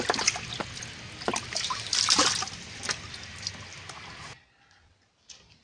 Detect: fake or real real